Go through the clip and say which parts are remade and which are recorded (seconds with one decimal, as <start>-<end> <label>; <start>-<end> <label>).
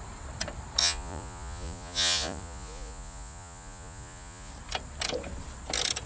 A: 0.0-0.8 recorded; 0.8-4.5 remade; 4.5-6.1 recorded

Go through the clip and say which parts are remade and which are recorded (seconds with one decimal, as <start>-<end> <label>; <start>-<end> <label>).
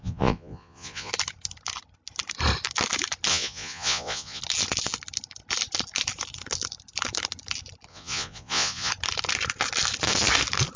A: 0.0-1.1 remade; 1.1-3.3 recorded; 3.3-4.4 remade; 4.4-7.9 recorded; 7.9-8.9 remade; 8.9-10.8 recorded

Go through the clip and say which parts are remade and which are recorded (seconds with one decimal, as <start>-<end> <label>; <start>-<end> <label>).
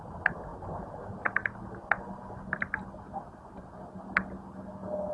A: 0.0-5.1 recorded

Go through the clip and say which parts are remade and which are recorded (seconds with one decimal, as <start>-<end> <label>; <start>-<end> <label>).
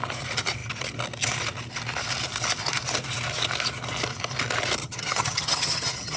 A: 0.0-4.8 recorded; 4.8-6.2 remade